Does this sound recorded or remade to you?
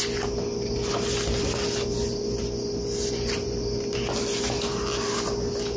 recorded